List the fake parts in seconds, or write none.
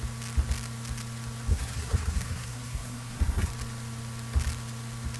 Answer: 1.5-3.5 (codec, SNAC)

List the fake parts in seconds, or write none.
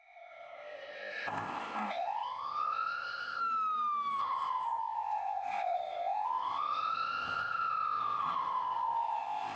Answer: 0.0-3.4 (codec, ZipCodec); 4.2-9.6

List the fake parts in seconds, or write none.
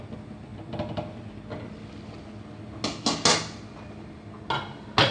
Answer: none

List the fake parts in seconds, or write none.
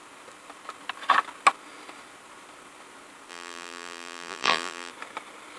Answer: 3.3-4.9 (vocoder, BigVGAN v2)